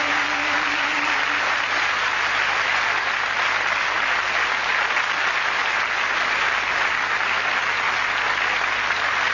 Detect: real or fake real